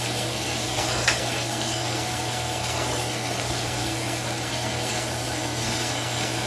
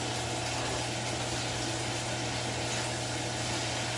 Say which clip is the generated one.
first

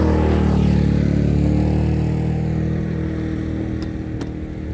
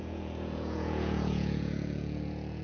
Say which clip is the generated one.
second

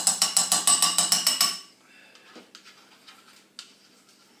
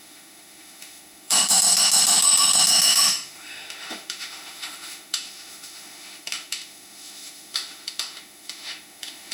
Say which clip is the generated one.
second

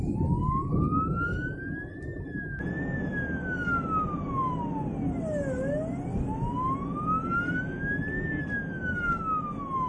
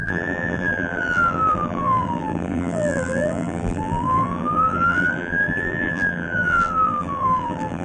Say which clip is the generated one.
second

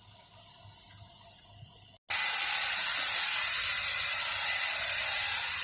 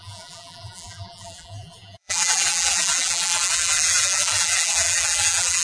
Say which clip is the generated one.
second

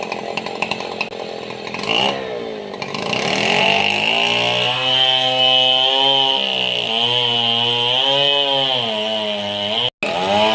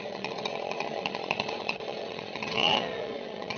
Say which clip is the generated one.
second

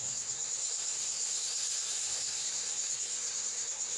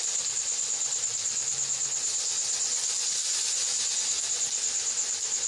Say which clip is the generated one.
first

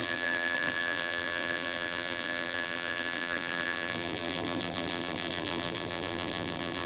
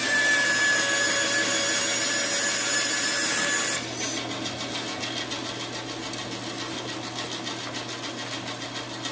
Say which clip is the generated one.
first